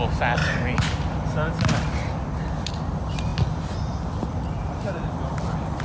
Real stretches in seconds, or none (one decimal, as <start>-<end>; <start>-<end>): 0.0-5.8